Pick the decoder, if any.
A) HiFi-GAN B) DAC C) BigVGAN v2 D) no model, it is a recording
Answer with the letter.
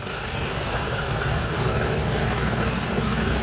B